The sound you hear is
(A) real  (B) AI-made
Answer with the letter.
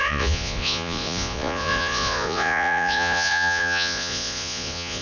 B